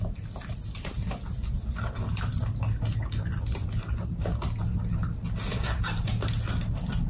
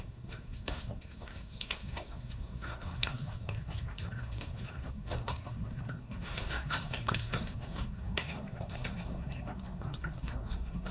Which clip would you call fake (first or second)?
second